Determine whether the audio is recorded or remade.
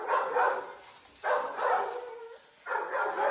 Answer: recorded